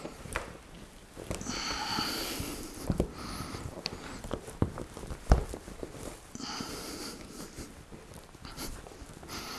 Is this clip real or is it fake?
fake